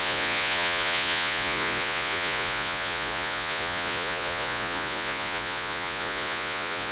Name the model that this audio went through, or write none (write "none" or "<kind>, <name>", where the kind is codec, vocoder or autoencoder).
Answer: vocoder, Vocos